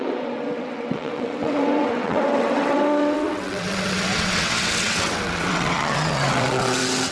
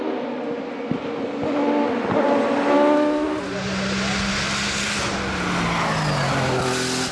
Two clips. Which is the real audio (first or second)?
second